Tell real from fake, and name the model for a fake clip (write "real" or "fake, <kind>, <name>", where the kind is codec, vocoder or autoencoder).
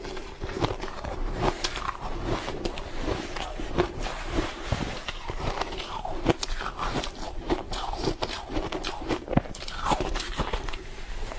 fake, vocoder, BigVGAN v2